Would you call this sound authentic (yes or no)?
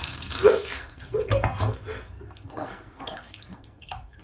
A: no